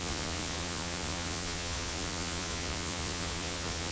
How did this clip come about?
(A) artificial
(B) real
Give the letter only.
A